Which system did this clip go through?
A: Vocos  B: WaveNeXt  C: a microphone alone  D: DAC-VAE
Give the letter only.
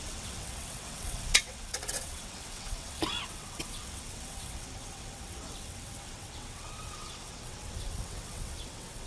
B